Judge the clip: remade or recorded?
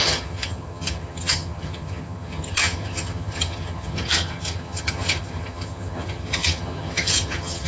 remade